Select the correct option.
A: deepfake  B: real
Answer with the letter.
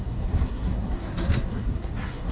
A